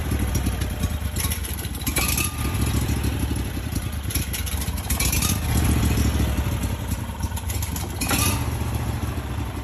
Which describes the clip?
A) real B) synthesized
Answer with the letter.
A